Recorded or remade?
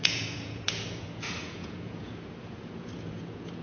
remade